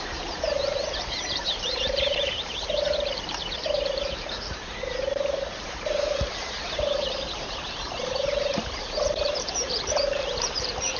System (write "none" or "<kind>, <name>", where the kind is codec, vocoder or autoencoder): vocoder, BigVGAN v2